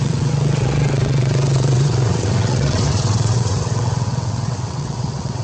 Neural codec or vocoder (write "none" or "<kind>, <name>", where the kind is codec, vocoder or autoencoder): vocoder, WaveNeXt